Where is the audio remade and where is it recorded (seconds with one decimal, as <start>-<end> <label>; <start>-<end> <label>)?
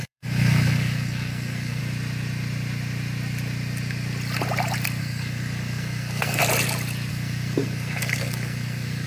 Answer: 0.0-1.8 remade; 1.8-5.0 recorded; 5.0-6.4 remade; 6.4-7.1 recorded; 7.1-9.1 remade